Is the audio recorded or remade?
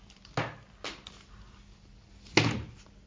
recorded